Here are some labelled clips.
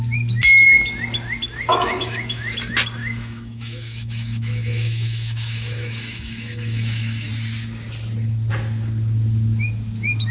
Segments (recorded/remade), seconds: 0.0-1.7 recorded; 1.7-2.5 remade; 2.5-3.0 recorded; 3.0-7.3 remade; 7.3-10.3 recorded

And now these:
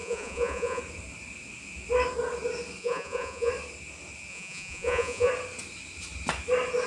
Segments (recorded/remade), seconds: 0.0-0.8 remade; 0.8-2.8 recorded; 2.8-3.5 remade; 3.5-4.3 recorded; 4.3-5.3 remade; 5.3-6.9 recorded

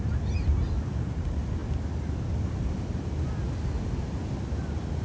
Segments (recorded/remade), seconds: 0.0-5.0 recorded

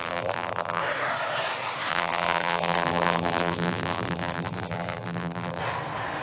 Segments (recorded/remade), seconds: 0.0-0.8 remade; 0.8-1.9 recorded; 1.9-5.6 remade; 5.6-6.2 recorded

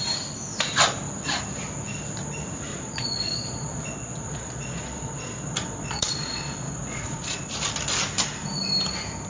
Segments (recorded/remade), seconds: 0.0-2.7 recorded; 2.7-7.5 remade; 7.5-9.3 recorded